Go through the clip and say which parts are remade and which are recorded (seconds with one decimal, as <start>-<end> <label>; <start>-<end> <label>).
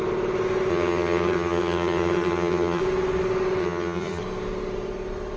0.0-0.7 recorded; 0.7-2.8 remade; 2.8-3.6 recorded; 3.6-4.2 remade; 4.2-5.4 recorded